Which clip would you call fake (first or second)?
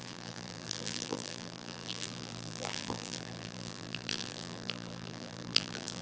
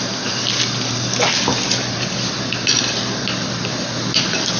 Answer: first